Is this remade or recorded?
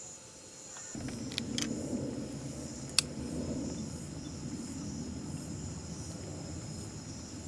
recorded